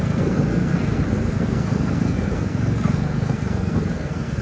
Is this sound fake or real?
fake